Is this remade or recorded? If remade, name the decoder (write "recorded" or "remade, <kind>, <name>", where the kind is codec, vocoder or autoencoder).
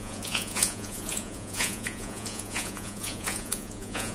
remade, vocoder, Vocos